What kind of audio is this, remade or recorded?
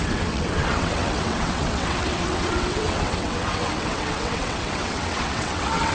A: remade